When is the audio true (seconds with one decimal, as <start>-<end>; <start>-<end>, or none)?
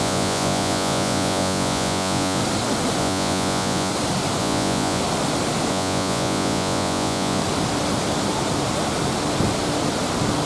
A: 2.4-3.0; 3.9-4.4; 5.0-5.7; 7.4-10.5